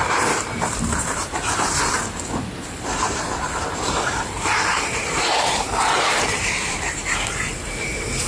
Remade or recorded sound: remade